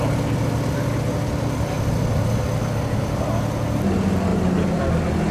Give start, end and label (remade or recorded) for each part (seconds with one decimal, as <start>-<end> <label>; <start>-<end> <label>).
0.0-4.3 recorded; 4.3-4.8 remade; 4.8-5.3 recorded